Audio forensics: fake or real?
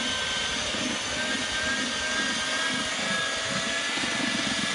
real